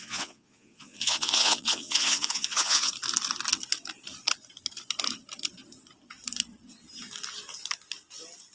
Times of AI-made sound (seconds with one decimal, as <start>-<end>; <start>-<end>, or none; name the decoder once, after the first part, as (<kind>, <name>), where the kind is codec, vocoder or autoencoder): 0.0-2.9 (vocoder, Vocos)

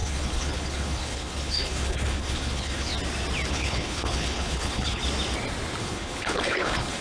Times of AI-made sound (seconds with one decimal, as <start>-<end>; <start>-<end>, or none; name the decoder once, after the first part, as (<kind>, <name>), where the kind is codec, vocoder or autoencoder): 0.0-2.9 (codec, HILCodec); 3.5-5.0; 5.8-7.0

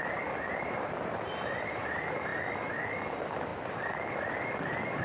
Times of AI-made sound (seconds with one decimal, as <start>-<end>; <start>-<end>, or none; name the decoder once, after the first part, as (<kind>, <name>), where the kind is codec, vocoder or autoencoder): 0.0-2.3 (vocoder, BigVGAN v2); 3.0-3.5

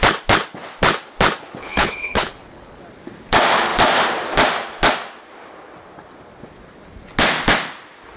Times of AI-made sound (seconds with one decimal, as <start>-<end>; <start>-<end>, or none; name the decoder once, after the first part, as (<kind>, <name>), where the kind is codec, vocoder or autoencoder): 1.6-2.8 (codec, HILCodec)

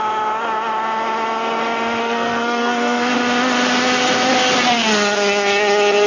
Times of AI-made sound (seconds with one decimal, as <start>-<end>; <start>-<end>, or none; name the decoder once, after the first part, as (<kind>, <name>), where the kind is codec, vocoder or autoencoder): 2.0-3.1 (codec, SNAC)